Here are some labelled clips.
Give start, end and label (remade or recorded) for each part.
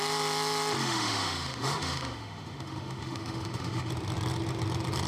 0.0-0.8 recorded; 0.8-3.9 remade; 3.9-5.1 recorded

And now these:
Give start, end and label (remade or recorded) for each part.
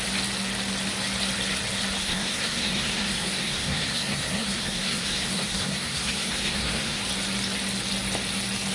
0.0-2.0 recorded; 2.0-7.0 remade; 7.0-8.7 recorded